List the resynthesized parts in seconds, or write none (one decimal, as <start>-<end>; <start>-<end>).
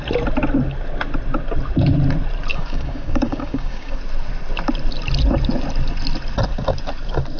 2.5-4.0